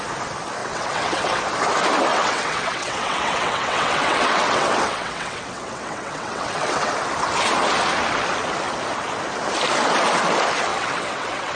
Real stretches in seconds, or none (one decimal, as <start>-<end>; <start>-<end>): 0.0-0.6; 1.4-2.1; 6.9-10.7